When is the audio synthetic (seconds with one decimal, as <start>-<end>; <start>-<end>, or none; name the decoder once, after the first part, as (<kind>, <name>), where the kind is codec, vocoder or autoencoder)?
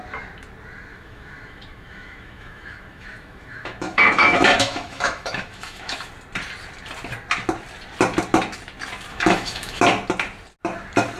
0.9-6.1 (autoencoder, DAC-VAE); 9.1-9.8